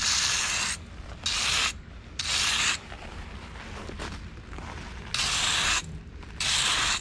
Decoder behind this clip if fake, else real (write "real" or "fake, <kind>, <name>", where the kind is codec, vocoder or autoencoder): real